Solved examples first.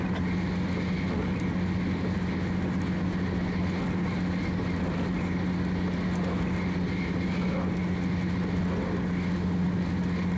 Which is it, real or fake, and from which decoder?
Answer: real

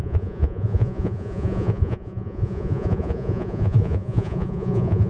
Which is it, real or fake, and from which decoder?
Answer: fake, vocoder, Vocos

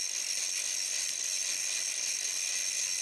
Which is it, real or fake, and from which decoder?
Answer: real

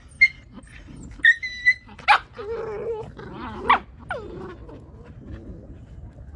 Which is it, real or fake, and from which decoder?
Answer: real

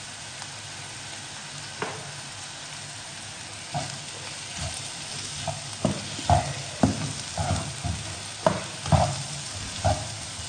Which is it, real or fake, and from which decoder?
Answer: real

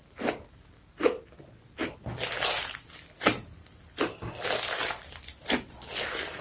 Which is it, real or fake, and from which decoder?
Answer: real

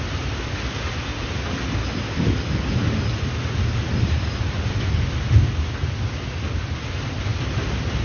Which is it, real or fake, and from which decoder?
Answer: real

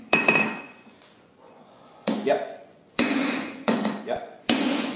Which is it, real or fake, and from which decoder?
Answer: fake, vocoder, Vocos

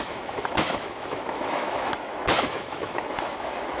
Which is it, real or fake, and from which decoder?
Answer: fake, autoencoder, DAC-VAE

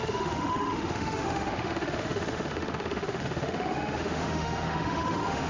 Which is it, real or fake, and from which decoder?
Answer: fake, autoencoder, DAC-VAE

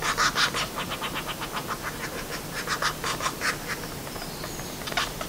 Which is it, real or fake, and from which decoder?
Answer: real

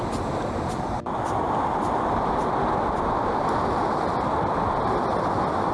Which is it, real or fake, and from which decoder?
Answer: real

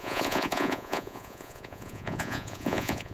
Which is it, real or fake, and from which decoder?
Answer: fake, vocoder, Vocos